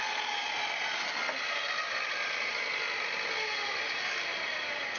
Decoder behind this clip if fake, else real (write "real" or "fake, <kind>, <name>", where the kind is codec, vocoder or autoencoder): real